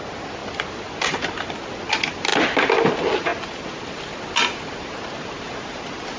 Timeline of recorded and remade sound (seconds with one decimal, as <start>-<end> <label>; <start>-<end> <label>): 0.0-6.2 recorded